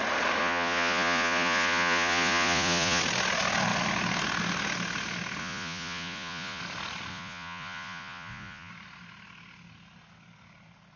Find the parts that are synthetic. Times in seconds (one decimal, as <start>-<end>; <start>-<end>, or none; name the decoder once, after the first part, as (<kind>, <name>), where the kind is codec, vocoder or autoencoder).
0.4-3.0 (vocoder, Vocos); 5.4-6.6; 7.1-8.7